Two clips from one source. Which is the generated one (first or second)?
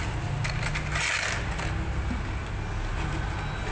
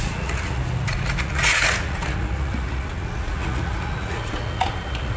second